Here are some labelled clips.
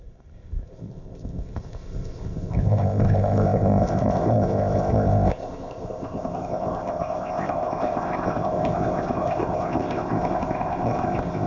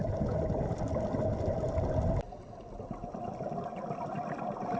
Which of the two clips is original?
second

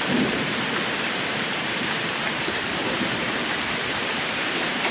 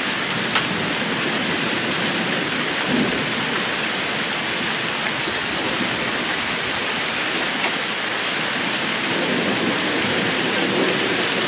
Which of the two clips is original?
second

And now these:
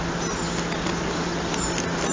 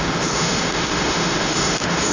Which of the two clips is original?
first